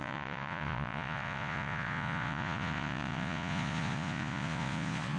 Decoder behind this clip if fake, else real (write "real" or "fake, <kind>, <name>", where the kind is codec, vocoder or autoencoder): fake, vocoder, Vocos